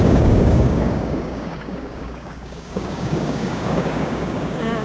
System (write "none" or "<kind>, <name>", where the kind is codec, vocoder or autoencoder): codec, DAC